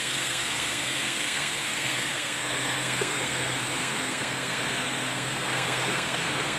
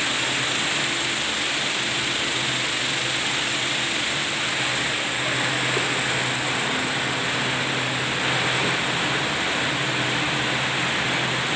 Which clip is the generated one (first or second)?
first